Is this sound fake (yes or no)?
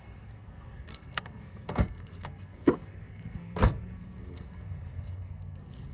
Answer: yes